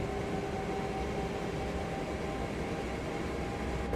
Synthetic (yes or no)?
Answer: no